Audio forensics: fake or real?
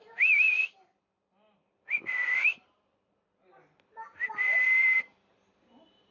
fake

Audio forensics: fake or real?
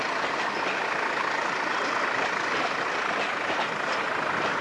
real